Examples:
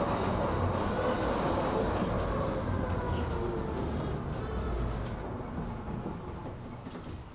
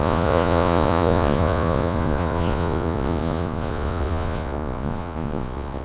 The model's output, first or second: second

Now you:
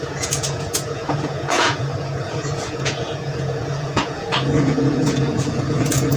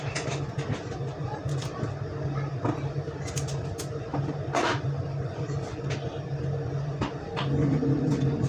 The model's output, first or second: first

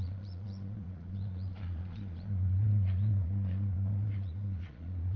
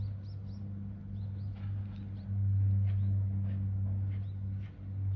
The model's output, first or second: first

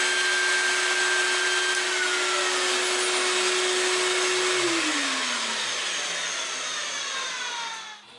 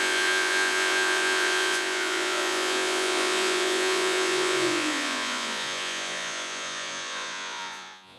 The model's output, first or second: second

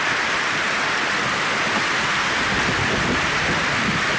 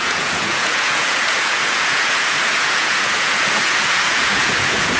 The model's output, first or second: second